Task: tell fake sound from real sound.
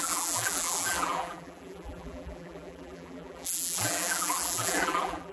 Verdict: fake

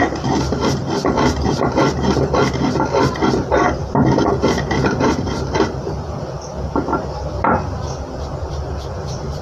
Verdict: fake